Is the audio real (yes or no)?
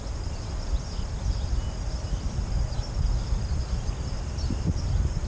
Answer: yes